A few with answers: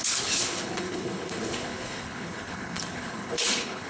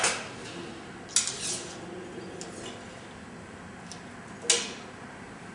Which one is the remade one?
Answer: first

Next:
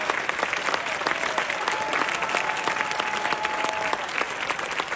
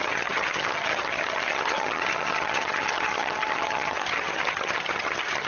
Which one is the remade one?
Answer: second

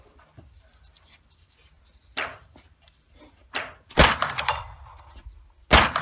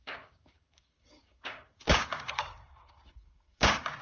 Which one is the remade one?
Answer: second